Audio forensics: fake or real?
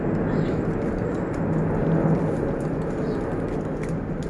real